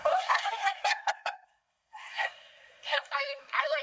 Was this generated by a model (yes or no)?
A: yes